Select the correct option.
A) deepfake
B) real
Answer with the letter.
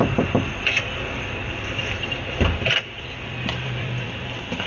A